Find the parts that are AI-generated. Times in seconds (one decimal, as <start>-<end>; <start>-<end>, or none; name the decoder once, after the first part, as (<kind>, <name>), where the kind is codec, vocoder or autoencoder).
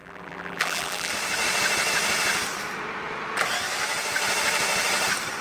0.0-1.1 (vocoder, BigVGAN v2)